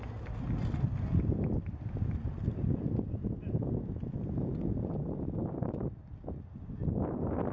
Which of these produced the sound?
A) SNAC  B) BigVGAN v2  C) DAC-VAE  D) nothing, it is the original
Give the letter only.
D